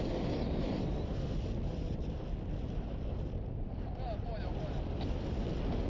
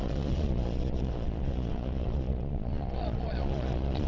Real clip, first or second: first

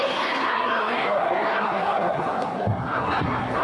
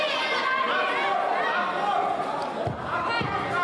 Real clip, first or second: second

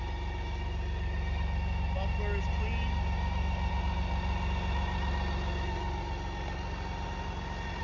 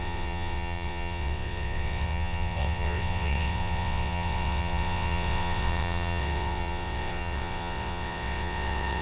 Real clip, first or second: first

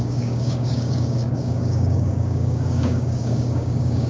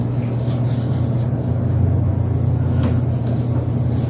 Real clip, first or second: second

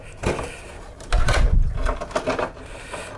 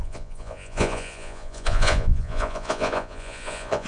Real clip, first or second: first